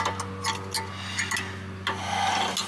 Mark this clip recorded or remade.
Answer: recorded